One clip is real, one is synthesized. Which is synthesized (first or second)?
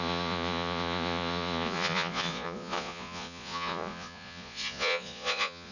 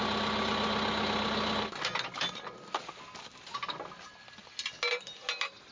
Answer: first